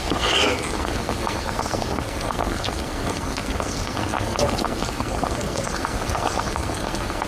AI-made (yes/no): yes